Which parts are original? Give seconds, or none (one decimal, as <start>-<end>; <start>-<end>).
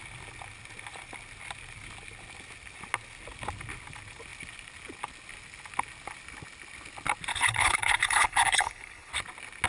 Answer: 0.0-7.3; 9.1-9.7